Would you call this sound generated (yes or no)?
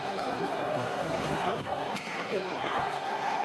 yes